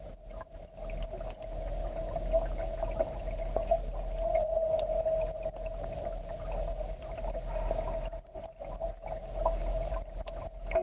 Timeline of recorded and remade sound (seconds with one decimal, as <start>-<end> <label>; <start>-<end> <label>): 0.0-10.8 recorded